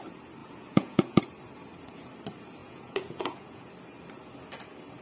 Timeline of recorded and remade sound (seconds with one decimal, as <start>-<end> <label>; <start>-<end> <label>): 0.0-0.4 recorded; 0.4-1.2 remade; 1.2-2.6 recorded; 2.6-3.7 remade; 3.7-5.0 recorded